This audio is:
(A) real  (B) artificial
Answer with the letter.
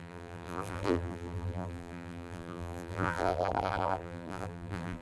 B